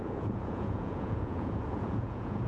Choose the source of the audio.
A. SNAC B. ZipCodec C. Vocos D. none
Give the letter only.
C